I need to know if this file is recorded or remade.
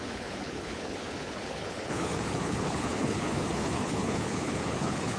remade